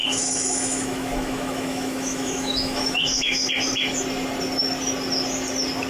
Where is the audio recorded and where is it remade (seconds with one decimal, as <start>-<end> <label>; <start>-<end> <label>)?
0.0-3.5 remade; 3.5-5.9 recorded